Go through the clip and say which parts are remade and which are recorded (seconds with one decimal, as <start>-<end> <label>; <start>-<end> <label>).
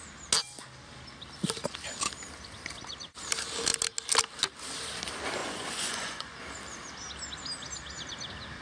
0.0-5.4 recorded; 5.4-6.4 remade; 6.4-8.6 recorded